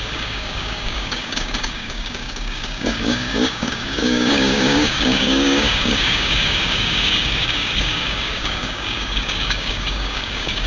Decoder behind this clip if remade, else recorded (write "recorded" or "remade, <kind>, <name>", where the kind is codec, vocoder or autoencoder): remade, codec, DAC